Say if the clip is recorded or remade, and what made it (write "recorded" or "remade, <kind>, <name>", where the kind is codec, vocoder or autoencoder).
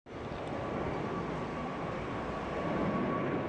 recorded